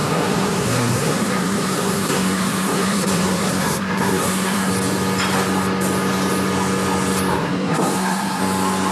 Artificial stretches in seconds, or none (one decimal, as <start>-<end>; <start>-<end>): 0.0-4.7; 7.3-8.4